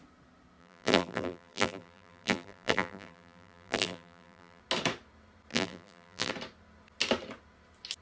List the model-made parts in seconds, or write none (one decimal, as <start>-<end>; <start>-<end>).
0.6-4.6; 5.5-6.3